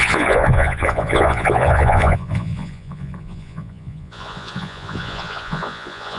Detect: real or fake fake